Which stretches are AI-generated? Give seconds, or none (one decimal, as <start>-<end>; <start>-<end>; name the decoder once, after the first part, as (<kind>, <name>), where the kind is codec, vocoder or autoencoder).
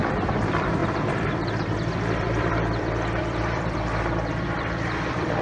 0.0-5.4 (vocoder, BigVGAN v2)